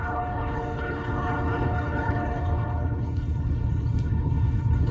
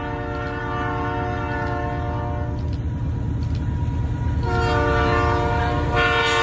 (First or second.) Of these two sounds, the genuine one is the second